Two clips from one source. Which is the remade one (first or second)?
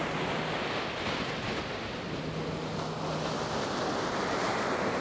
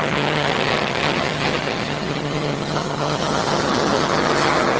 second